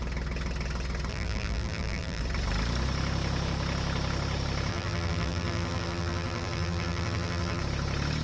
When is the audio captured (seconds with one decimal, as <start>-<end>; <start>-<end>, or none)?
0.0-1.1; 2.2-4.7; 7.6-8.2